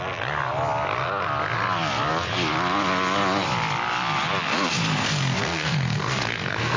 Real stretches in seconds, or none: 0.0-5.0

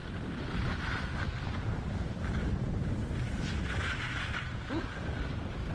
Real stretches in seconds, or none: 0.9-2.4; 3.1-5.7